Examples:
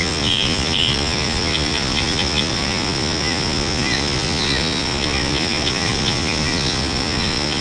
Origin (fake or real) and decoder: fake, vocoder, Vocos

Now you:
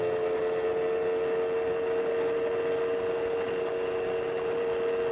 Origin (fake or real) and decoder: real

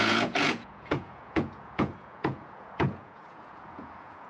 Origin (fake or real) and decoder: fake, vocoder, Vocos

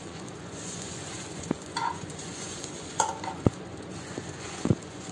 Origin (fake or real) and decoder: fake, vocoder, Vocos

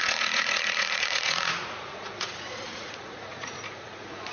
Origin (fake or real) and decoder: fake, vocoder, Vocos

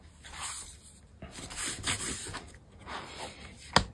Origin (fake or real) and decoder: real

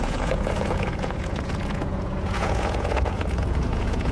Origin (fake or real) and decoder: fake, vocoder, Vocos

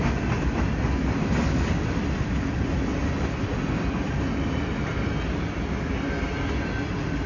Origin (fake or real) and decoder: real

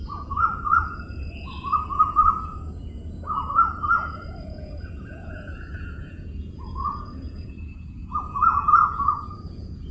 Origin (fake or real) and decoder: fake, vocoder, Vocos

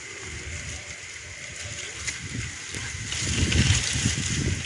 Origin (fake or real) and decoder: real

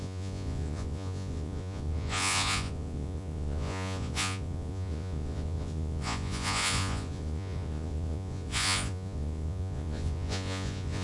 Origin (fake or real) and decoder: fake, vocoder, Vocos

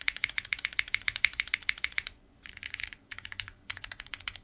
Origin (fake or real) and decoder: fake, vocoder, Vocos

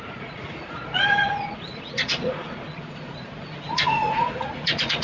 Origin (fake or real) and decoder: fake, vocoder, Vocos